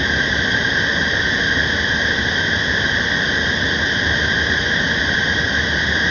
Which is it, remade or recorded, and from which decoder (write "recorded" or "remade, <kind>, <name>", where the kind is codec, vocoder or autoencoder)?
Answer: remade, vocoder, BigVGAN v2